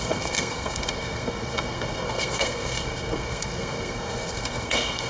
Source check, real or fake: fake